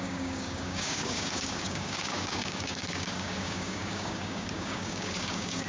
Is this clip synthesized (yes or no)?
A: yes